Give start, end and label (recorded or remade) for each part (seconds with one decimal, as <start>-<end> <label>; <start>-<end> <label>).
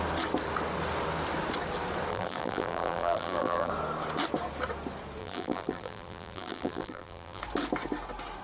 0.0-2.1 recorded; 2.1-3.7 remade; 3.7-5.2 recorded; 5.2-7.4 remade; 7.4-8.4 recorded